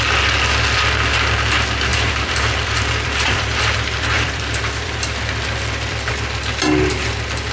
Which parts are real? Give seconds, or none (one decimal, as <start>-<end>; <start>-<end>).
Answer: 0.0-1.9; 6.1-7.5